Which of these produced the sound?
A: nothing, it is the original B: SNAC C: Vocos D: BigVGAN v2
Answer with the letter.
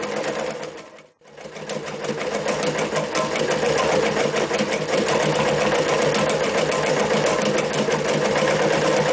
A